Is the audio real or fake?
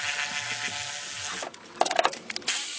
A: real